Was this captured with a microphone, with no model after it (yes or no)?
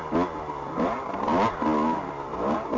yes